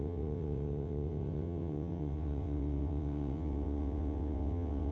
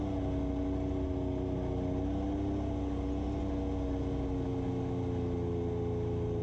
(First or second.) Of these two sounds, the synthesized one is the first